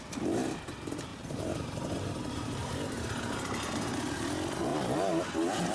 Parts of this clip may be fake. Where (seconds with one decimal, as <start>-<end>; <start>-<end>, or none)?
1.1-2.7; 4.7-5.3